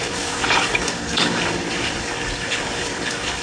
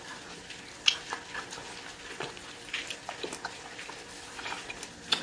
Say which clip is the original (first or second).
second